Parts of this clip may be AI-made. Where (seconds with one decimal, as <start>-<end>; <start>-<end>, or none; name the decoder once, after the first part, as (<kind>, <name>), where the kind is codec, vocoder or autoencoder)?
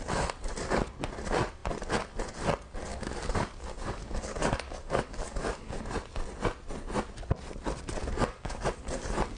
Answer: 2.9-5.8 (codec, DAC); 8.0-8.6